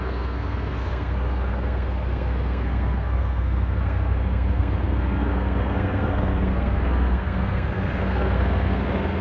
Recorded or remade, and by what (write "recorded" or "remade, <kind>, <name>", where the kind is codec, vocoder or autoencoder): remade, codec, SNAC